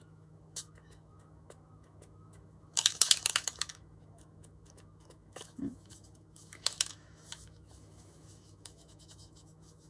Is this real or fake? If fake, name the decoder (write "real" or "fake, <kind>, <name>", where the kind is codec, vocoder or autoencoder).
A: fake, autoencoder, DAC-VAE